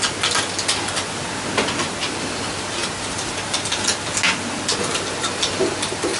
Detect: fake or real real